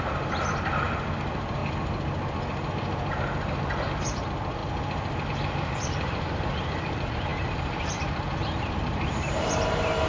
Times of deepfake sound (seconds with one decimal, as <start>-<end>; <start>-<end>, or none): 0.0-0.5; 1.2-1.6; 4.0-4.6; 5.3-10.1